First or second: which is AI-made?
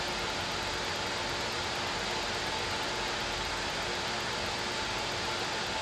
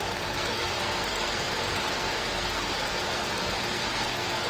second